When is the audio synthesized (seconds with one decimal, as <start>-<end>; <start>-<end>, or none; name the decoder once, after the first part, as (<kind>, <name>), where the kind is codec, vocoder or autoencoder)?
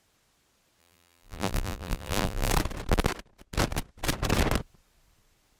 0.8-2.5 (vocoder, BigVGAN v2)